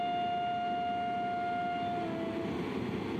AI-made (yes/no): no